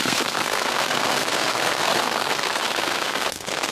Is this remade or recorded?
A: remade